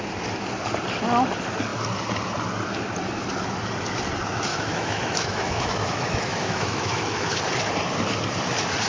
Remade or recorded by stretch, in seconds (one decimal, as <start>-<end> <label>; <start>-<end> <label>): 0.0-4.5 recorded; 4.5-7.4 remade; 7.4-8.9 recorded